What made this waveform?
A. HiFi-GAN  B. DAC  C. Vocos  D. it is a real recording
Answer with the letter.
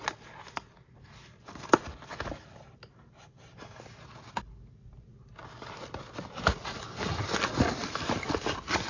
D